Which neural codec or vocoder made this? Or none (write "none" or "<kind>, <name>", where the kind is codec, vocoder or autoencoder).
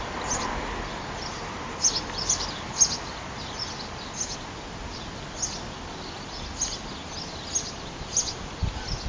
none